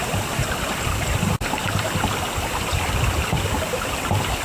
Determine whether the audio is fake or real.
fake